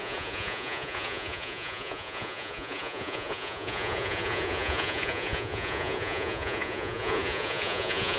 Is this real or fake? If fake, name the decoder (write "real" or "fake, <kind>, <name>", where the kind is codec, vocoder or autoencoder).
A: fake, vocoder, Vocos